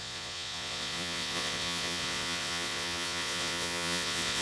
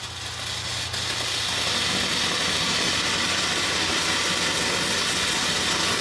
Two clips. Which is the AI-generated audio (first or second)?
first